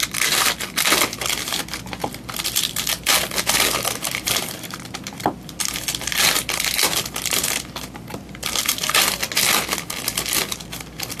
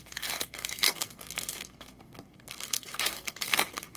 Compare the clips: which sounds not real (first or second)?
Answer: second